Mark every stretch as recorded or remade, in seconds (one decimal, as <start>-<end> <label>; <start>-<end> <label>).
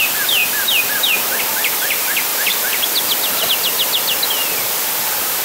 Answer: 0.0-5.4 recorded